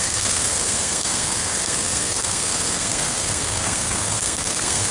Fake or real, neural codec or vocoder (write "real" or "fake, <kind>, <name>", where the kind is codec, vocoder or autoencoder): fake, codec, SNAC